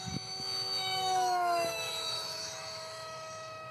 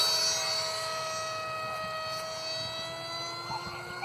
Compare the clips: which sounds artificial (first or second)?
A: first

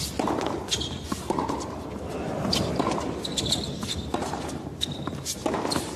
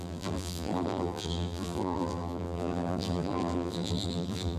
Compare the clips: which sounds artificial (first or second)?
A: second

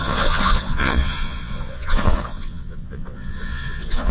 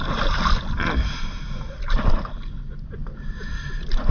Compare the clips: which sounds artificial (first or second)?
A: first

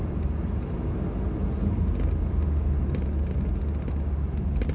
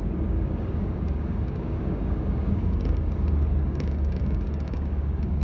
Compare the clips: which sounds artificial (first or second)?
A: second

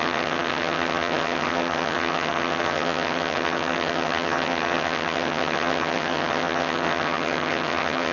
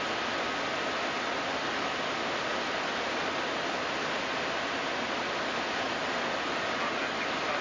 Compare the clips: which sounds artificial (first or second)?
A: first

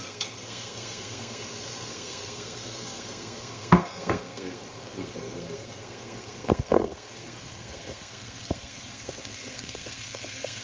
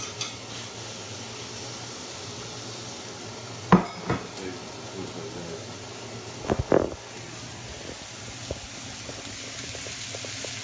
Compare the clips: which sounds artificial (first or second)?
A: first